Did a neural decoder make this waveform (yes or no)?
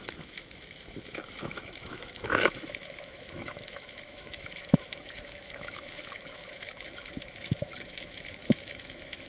yes